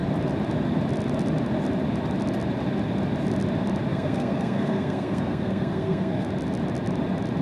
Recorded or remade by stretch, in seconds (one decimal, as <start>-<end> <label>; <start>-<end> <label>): 0.0-3.9 recorded; 3.9-6.3 remade; 6.3-7.4 recorded